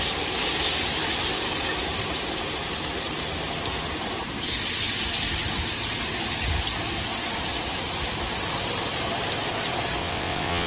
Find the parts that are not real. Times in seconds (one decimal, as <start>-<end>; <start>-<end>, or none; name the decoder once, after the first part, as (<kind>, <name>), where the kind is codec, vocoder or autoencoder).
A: 10.0-10.7 (vocoder, WaveNeXt)